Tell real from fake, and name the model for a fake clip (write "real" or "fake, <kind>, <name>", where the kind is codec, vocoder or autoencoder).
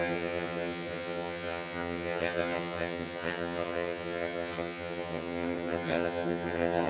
fake, vocoder, HiFi-GAN